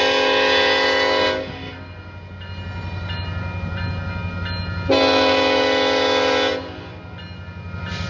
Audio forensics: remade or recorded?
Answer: recorded